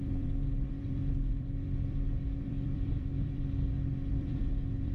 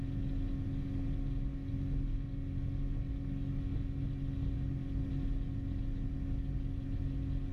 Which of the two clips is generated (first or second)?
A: first